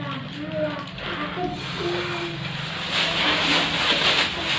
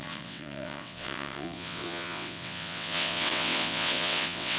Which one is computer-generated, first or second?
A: second